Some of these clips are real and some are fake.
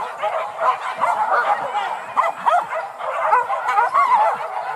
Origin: real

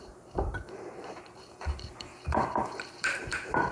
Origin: fake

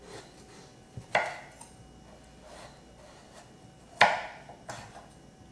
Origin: real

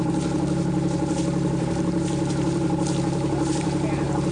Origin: fake